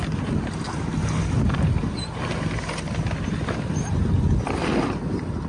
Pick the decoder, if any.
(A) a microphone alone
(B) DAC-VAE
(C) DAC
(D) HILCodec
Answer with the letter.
A